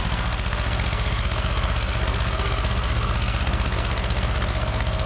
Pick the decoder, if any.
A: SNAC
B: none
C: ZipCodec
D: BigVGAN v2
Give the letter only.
A